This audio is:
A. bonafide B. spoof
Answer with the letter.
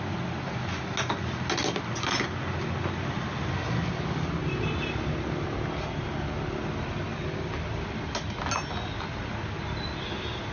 A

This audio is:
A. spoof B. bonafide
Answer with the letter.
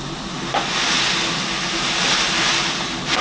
B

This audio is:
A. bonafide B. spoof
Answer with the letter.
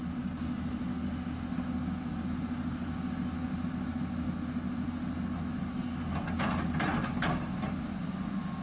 A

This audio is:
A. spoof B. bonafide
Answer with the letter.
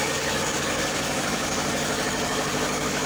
A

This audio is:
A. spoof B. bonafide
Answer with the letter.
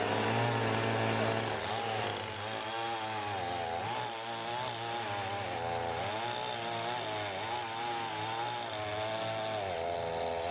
B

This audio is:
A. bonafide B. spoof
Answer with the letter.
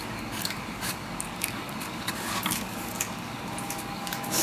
B